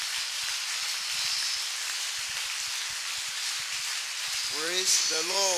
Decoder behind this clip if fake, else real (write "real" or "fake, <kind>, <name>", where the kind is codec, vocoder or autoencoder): fake, vocoder, BigVGAN v2